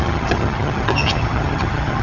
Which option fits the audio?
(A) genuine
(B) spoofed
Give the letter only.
B